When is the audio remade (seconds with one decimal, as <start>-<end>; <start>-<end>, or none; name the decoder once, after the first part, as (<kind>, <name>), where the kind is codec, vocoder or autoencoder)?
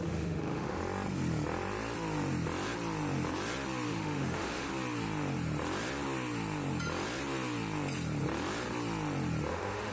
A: 0.0-0.8 (autoencoder, DAC-VAE); 3.9-4.7; 9.5-9.9